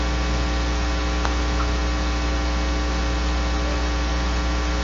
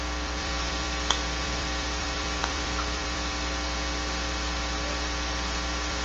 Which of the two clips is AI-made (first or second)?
second